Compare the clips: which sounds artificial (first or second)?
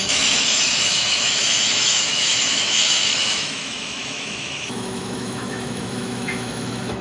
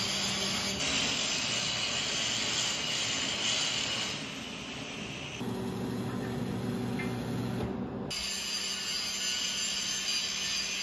first